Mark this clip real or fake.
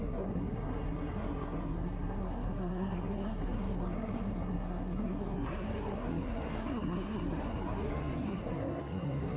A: fake